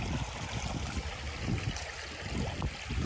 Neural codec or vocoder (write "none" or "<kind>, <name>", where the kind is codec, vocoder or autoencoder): none